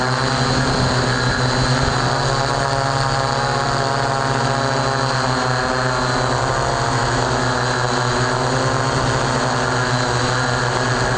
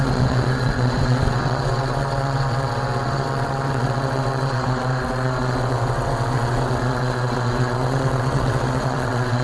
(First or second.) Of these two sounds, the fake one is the second